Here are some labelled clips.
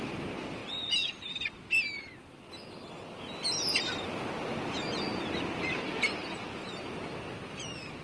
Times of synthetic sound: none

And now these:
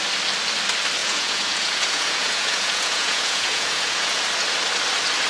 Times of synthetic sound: 1.0-4.2 (vocoder, Vocos)

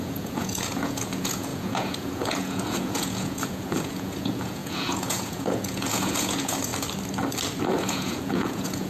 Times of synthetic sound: 0.0-6.7 (vocoder, Vocos); 7.6-8.9

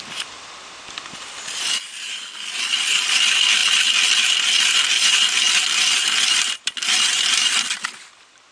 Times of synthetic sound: none

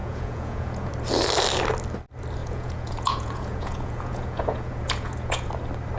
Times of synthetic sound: 0.0-0.9 (vocoder, Vocos); 2.4-5.5

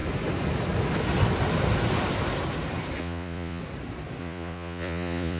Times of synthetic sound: 3.0-3.6 (vocoder, Vocos); 4.2-5.4

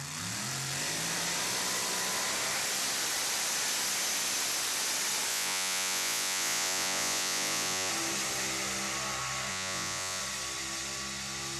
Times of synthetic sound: 5.3-7.9 (vocoder, Vocos); 9.5-10.2